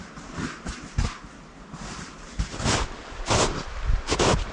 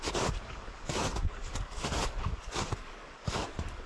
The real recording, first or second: first